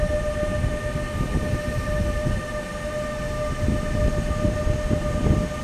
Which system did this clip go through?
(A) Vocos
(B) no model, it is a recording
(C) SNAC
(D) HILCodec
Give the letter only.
B